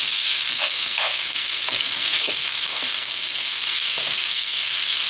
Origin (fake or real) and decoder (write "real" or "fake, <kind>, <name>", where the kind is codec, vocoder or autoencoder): fake, codec, SNAC